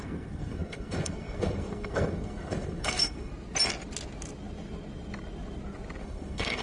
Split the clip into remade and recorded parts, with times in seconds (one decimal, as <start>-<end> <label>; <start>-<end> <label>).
0.0-3.3 remade; 3.3-6.0 recorded; 6.0-6.6 remade

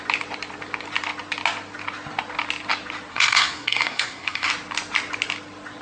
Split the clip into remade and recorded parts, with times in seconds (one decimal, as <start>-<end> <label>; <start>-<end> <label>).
0.0-3.1 recorded; 3.1-4.5 remade; 4.5-5.8 recorded

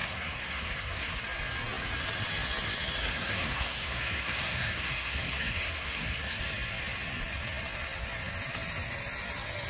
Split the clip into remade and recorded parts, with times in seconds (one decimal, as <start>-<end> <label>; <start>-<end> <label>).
0.0-1.2 remade; 1.2-3.0 recorded; 3.0-6.4 remade; 6.4-9.7 recorded

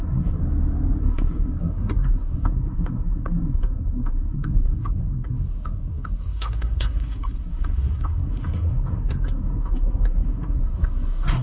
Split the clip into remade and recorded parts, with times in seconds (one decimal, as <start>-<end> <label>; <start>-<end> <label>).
0.0-0.4 remade; 0.4-1.0 recorded; 1.0-11.4 remade

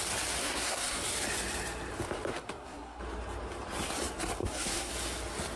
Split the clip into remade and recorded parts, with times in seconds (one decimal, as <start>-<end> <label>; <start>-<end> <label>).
0.0-0.4 recorded; 0.4-1.0 remade; 1.0-2.3 recorded; 2.3-3.0 remade; 3.0-4.4 recorded; 4.4-4.9 remade; 4.9-5.6 recorded

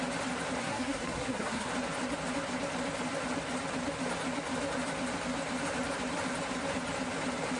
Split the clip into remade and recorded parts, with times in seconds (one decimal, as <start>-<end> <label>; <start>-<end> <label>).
0.0-0.6 recorded; 0.6-1.7 remade; 1.7-7.6 recorded

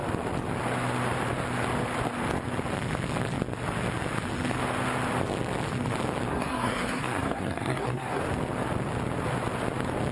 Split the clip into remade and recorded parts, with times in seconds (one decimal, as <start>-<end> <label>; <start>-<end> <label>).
0.0-6.3 recorded; 6.3-8.2 remade; 8.2-10.1 recorded